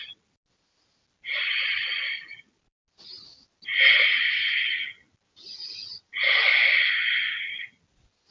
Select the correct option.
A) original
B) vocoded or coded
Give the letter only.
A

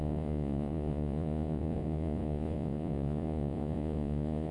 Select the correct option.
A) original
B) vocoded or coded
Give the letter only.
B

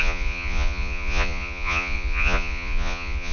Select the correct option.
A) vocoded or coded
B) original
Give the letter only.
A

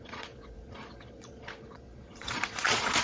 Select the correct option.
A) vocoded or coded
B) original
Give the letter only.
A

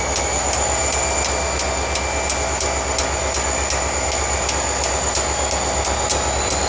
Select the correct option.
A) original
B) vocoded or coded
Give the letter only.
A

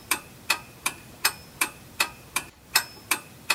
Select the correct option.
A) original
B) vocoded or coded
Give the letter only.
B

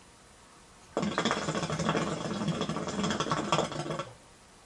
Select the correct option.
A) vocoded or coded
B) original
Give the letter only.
B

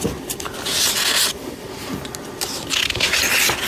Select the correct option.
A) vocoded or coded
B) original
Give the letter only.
B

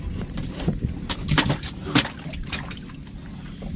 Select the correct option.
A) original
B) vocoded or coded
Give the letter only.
A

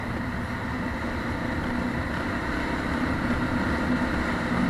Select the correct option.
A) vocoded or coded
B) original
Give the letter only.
B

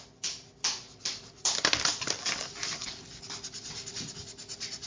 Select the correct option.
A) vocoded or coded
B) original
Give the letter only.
B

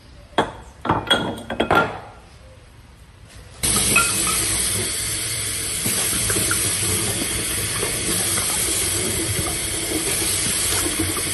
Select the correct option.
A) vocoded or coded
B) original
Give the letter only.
A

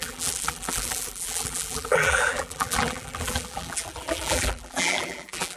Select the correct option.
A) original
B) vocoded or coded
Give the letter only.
B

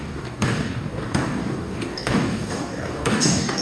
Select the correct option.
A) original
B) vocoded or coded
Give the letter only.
B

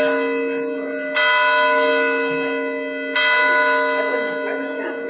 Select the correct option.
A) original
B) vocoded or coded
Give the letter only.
A